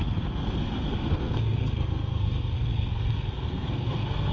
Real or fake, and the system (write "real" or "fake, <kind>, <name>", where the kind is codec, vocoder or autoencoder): fake, codec, SNAC